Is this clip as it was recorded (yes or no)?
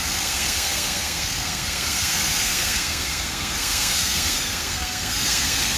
no